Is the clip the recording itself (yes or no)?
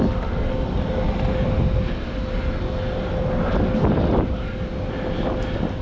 yes